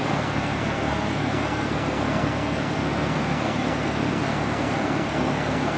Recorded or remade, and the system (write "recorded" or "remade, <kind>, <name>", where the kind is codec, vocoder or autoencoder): remade, codec, SNAC